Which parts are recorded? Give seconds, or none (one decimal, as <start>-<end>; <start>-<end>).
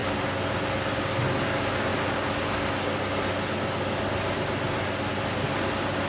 0.0-6.1